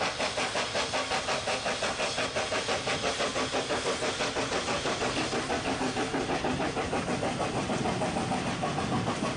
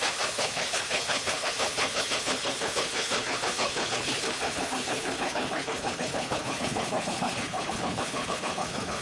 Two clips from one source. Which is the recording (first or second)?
first